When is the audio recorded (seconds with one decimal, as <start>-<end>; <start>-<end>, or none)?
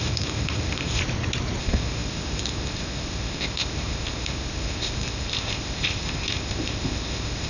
1.0-1.6